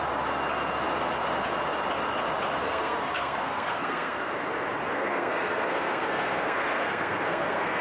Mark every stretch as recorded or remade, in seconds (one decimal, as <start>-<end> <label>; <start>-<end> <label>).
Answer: 0.0-2.6 recorded; 2.6-4.3 remade; 4.3-4.9 recorded; 4.9-7.8 remade